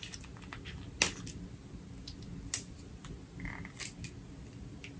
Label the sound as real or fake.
real